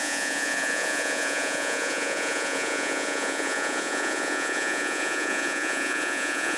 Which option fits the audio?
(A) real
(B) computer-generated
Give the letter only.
B